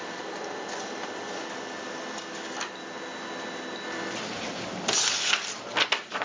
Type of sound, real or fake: real